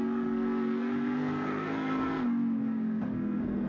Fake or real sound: fake